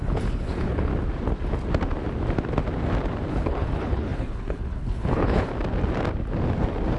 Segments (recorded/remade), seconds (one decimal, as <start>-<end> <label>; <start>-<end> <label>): 0.0-0.9 remade; 0.9-3.3 recorded; 3.3-5.5 remade; 5.5-7.0 recorded